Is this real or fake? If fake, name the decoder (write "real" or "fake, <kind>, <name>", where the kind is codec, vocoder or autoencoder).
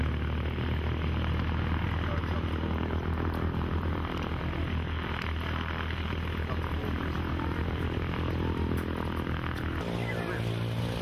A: real